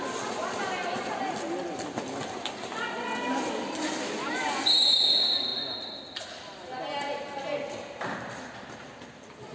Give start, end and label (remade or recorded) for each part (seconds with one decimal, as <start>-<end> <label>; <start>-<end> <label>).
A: 0.0-9.5 recorded